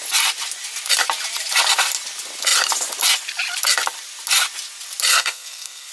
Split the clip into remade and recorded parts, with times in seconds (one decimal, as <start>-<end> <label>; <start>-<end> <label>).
0.0-5.1 recorded; 5.1-5.9 remade